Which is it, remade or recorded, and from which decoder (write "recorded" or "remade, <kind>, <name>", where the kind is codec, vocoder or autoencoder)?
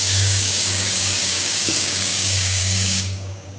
remade, codec, DAC